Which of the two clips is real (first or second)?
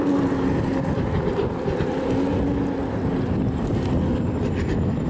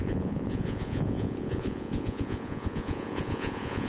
first